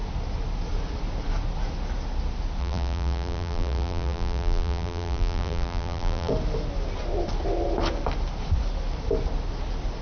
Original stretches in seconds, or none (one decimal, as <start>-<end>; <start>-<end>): 0.0-2.6; 6.3-10.0